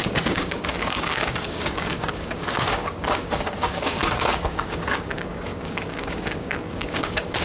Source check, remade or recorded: remade